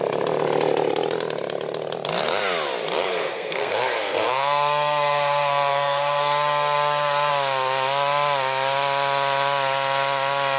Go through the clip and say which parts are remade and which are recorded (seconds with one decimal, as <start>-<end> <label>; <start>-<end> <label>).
0.0-3.1 recorded; 3.1-7.3 remade; 7.3-10.6 recorded